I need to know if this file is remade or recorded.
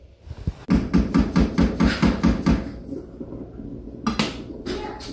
recorded